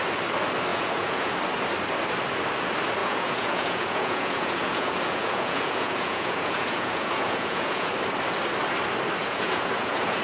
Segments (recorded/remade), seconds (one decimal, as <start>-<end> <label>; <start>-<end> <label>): 0.0-0.7 recorded; 0.7-1.3 remade; 1.3-3.0 recorded; 3.0-7.9 remade; 7.9-9.2 recorded; 9.2-10.2 remade